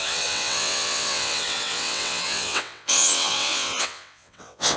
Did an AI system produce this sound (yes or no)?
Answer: yes